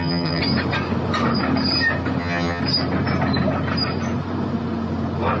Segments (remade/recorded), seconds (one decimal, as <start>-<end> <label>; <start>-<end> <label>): 0.0-0.4 remade; 0.4-2.2 recorded; 2.2-2.6 remade; 2.6-5.4 recorded